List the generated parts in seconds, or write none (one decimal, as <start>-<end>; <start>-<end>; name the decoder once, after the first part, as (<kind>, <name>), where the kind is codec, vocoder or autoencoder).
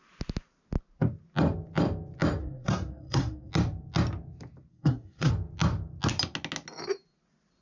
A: 2.4-3.5 (codec, SNAC); 4.7-5.3